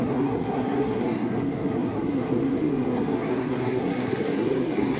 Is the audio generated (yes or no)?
yes